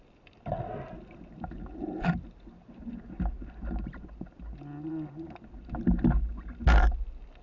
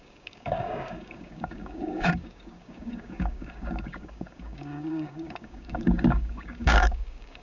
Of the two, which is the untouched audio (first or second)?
first